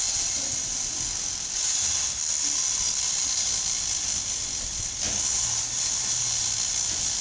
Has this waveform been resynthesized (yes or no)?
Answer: no